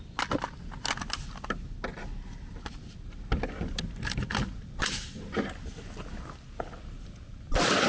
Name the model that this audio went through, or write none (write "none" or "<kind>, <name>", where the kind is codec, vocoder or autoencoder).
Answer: none